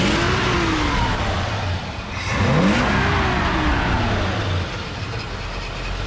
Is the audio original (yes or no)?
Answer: yes